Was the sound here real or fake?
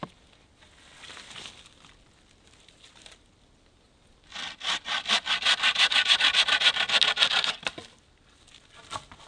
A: real